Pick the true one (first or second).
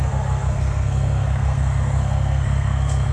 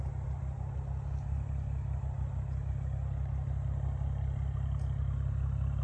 second